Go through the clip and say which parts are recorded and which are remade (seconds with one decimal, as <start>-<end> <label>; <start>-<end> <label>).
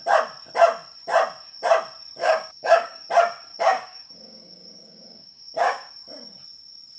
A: 0.0-2.2 recorded; 2.2-3.1 remade; 3.1-3.5 recorded; 3.5-5.9 remade; 5.9-7.0 recorded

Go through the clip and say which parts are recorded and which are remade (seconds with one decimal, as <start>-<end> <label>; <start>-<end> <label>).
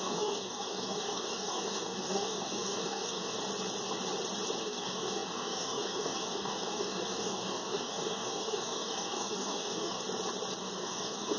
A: 0.0-3.4 remade; 3.4-4.6 recorded; 4.6-10.0 remade; 10.0-10.6 recorded; 10.6-11.4 remade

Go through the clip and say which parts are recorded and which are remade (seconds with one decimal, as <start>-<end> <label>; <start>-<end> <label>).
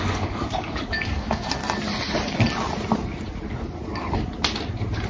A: 0.0-1.6 remade; 1.6-5.1 recorded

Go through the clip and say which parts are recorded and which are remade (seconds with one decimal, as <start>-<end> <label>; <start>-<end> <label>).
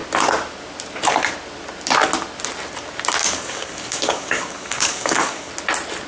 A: 0.0-3.2 recorded; 3.2-5.5 remade; 5.5-6.1 recorded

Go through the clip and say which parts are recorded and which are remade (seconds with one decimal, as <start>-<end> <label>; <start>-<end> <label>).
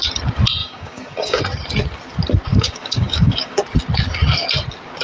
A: 0.0-0.6 recorded; 0.6-1.4 remade; 1.4-2.5 recorded; 2.5-3.6 remade; 3.6-5.0 recorded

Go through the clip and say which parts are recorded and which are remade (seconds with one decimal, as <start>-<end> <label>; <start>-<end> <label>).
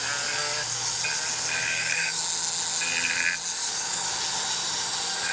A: 0.0-0.4 recorded; 0.4-1.0 remade; 1.0-1.6 recorded; 1.6-2.2 remade; 2.2-3.6 recorded; 3.6-4.2 remade; 4.2-5.3 recorded